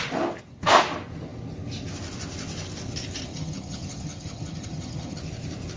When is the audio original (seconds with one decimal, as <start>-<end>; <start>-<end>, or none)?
0.0-3.3; 5.2-5.8

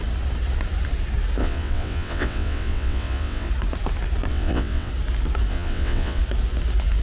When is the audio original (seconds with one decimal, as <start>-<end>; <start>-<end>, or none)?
0.0-1.4; 3.5-4.3; 4.9-5.5; 6.2-7.0

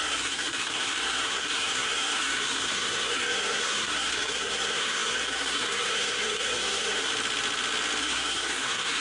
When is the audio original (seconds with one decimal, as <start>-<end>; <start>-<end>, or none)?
7.1-8.0

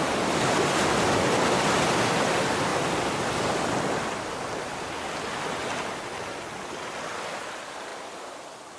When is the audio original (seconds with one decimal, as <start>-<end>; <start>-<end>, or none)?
0.0-8.8

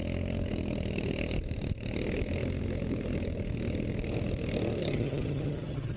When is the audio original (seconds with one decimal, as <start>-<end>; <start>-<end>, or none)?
0.0-4.8